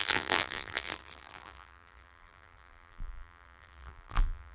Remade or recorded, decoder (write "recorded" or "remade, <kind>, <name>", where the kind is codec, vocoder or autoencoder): remade, vocoder, BigVGAN v2